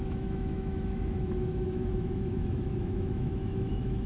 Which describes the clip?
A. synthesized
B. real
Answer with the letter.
A